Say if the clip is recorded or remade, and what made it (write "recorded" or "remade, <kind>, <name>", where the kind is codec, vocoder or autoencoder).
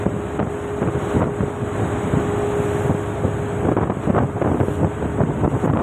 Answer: recorded